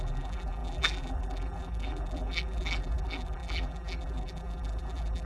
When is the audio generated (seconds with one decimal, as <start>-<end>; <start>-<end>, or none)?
0.0-5.3